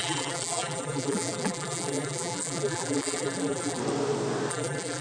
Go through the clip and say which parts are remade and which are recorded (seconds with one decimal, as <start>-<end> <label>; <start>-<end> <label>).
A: 0.0-3.8 remade; 3.8-4.5 recorded; 4.5-5.0 remade